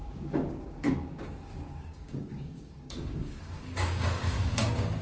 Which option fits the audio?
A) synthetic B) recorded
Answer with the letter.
A